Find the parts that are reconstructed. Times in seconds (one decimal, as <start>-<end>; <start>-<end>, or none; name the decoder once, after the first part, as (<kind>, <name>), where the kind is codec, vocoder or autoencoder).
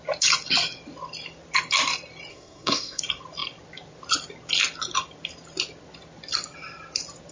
2.3-3.0 (codec, SNAC)